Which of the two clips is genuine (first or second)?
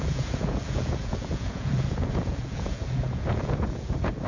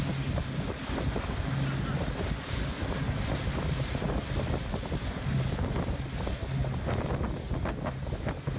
second